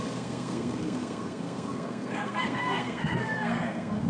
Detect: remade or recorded remade